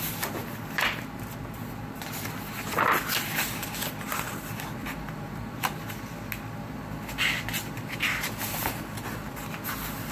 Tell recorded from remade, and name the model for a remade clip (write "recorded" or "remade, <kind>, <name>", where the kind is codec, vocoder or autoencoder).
recorded